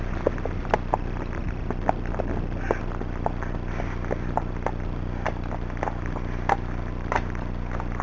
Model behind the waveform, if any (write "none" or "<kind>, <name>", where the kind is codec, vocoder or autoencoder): none